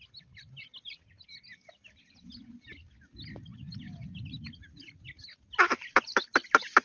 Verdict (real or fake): real